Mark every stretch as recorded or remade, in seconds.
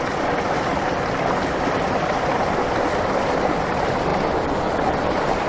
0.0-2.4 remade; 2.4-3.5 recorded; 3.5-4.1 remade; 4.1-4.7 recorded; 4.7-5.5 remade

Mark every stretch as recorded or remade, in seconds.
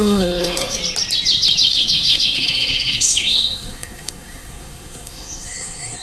0.0-0.8 remade; 0.8-1.7 recorded; 1.7-6.0 remade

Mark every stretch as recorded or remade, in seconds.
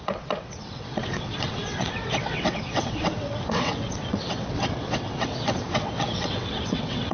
0.0-7.1 remade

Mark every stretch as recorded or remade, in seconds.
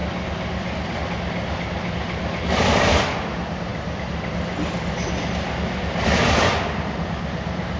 0.0-7.8 recorded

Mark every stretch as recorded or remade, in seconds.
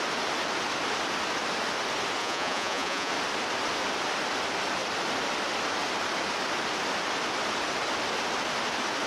0.0-2.2 recorded; 2.2-3.1 remade; 3.1-9.1 recorded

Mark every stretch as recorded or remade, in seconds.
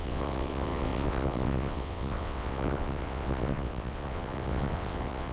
0.0-5.3 remade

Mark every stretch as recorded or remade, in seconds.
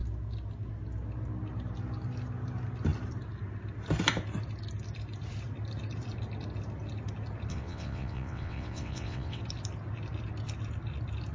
0.0-7.5 recorded; 7.5-9.4 remade; 9.4-11.3 recorded